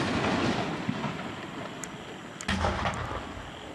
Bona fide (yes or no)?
yes